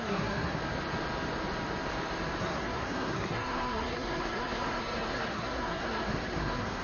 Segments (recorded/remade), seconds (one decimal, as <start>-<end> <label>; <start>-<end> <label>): 0.0-0.6 remade; 0.6-2.4 recorded; 2.4-6.8 remade